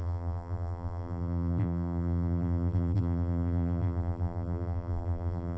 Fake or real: fake